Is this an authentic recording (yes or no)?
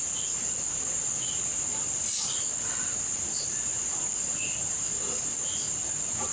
no